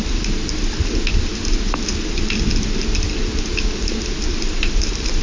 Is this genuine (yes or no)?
yes